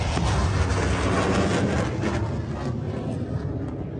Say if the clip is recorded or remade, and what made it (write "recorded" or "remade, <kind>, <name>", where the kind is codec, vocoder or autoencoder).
recorded